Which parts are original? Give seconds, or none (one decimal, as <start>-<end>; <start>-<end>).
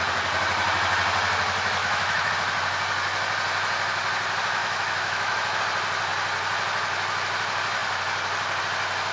0.0-1.8; 2.3-4.6; 5.6-9.1